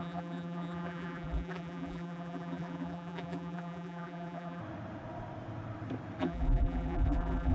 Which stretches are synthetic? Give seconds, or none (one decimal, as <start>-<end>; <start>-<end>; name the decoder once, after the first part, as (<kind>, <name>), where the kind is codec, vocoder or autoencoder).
0.0-4.6 (vocoder, BigVGAN v2); 6.2-7.5